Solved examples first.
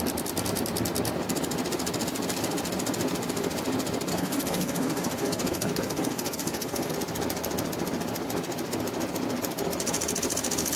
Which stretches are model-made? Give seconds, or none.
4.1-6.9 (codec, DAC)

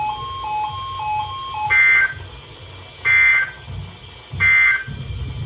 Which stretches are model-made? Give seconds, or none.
none